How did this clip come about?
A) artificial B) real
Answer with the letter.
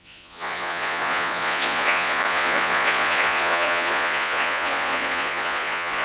A